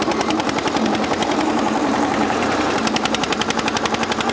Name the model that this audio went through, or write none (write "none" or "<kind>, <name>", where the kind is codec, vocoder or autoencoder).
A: vocoder, BigVGAN v2